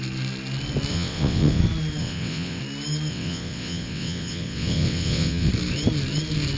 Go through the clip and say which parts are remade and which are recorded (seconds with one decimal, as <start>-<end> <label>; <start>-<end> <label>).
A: 0.0-0.9 recorded; 0.9-1.6 remade; 1.6-2.0 recorded; 2.0-2.6 remade; 2.6-3.1 recorded; 3.1-5.5 remade; 5.5-6.6 recorded